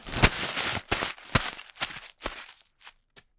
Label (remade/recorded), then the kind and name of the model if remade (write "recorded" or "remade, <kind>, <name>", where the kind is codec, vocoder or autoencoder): recorded